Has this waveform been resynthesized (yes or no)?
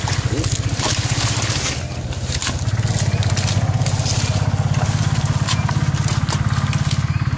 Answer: no